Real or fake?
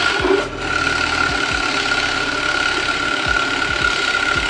real